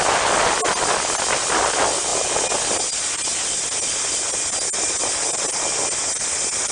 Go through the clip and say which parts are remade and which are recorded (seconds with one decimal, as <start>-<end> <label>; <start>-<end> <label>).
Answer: 0.0-6.7 recorded